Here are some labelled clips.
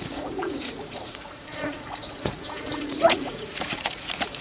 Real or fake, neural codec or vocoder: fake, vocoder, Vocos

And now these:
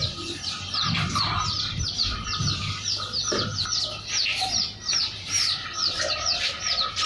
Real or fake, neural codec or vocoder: real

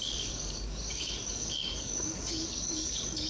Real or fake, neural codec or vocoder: fake, codec, DAC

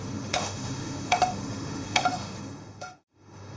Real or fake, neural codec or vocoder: fake, autoencoder, DAC-VAE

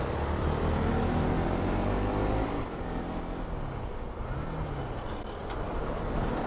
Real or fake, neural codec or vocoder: real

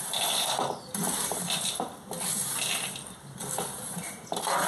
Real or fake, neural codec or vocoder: real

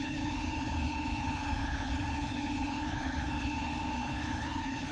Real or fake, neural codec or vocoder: fake, codec, HILCodec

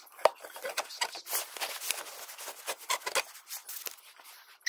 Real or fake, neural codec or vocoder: real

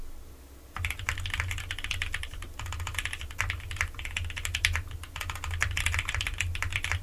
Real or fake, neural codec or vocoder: real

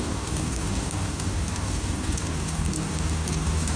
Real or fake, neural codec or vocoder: fake, codec, DAC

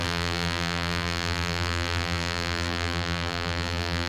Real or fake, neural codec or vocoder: fake, vocoder, BigVGAN v2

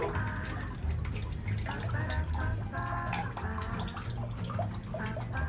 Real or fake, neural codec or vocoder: real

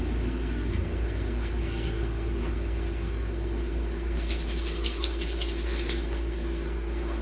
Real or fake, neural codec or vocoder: fake, codec, SNAC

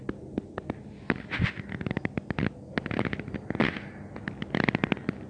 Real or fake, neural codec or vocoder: real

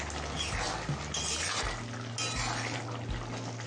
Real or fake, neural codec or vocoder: real